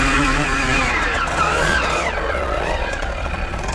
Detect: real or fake fake